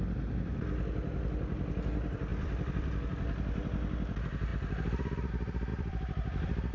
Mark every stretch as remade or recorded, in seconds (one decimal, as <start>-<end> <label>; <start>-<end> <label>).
0.0-2.3 recorded; 2.3-2.9 remade; 2.9-5.7 recorded; 5.7-6.7 remade